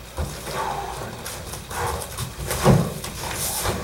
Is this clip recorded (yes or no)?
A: yes